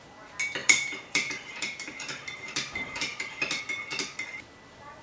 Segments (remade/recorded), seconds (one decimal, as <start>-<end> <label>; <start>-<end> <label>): 0.0-0.6 recorded; 0.6-3.6 remade; 3.6-5.0 recorded